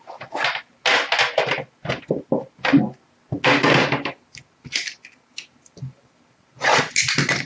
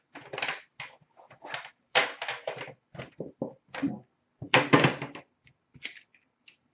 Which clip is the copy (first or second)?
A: second